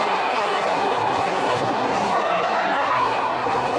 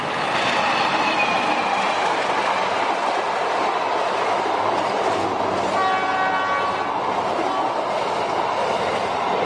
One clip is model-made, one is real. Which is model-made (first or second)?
first